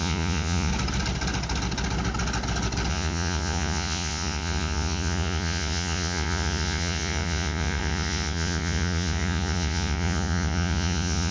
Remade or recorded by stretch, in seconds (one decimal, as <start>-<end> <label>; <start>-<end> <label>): 0.0-0.7 remade; 0.7-2.9 recorded; 2.9-11.3 remade